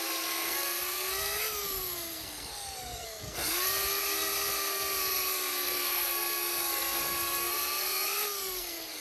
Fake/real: fake